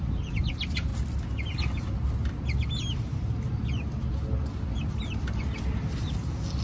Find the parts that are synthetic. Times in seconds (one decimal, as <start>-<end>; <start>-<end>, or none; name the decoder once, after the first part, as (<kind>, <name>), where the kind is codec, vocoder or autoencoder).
none